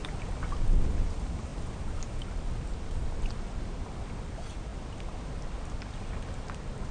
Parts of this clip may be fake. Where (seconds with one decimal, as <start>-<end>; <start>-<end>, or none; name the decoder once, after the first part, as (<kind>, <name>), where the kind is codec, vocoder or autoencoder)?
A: none